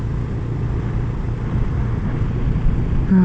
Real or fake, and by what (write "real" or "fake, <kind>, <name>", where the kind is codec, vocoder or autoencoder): real